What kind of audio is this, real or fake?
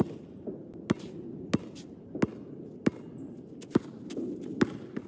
real